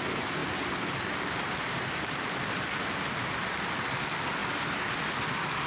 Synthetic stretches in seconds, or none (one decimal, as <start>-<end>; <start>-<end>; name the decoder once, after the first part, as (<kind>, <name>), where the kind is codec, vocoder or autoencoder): none